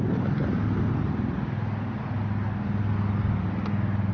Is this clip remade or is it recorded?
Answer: recorded